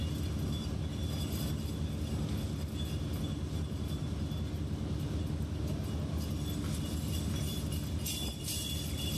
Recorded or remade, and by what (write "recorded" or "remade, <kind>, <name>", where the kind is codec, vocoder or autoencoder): recorded